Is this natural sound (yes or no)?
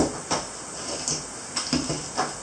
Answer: yes